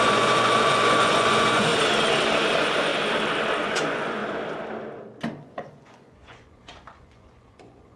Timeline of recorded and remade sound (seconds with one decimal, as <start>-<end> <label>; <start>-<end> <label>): 0.0-1.7 remade; 1.7-2.5 recorded; 2.5-2.9 remade; 2.9-3.6 recorded; 3.6-4.2 remade; 4.2-5.4 recorded; 5.4-8.0 remade